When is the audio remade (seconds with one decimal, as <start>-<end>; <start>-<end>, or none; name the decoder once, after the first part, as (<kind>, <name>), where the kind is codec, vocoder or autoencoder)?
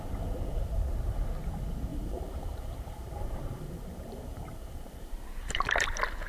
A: 1.9-5.7 (vocoder, BigVGAN v2)